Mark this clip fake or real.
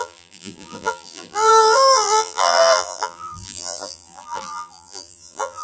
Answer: fake